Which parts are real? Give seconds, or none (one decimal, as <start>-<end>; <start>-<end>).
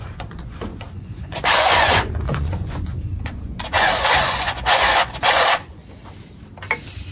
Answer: 5.8-7.1